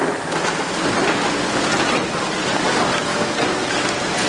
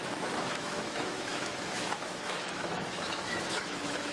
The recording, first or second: first